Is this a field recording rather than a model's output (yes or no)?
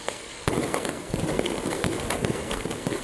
no